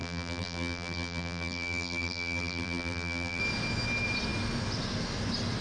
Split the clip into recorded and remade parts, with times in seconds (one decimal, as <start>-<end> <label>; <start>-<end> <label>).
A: 0.0-3.4 remade; 3.4-5.6 recorded